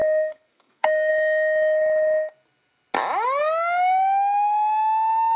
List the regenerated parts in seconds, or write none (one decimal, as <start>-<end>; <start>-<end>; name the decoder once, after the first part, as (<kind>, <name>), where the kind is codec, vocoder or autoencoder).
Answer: 0.0-1.1 (codec, SNAC)